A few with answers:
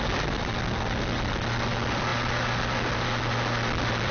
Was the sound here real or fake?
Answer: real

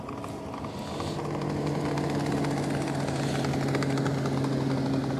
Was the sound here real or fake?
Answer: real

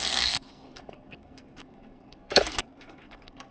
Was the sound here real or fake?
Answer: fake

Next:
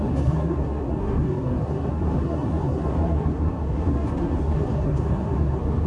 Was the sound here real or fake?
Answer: fake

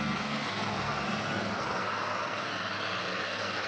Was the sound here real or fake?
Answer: fake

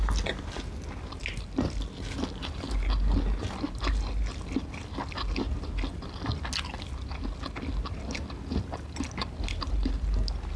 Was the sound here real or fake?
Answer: real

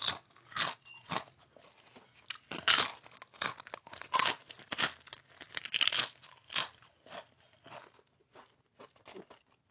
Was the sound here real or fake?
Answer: real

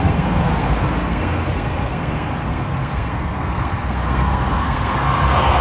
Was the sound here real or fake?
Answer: fake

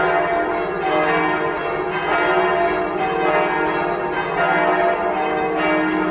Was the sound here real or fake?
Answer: real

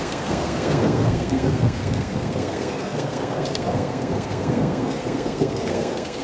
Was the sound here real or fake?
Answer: fake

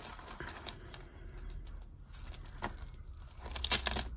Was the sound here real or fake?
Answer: real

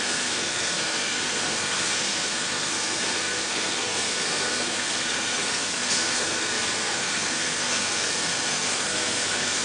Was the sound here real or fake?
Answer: fake